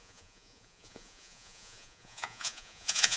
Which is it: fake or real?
fake